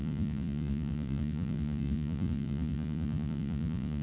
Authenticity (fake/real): fake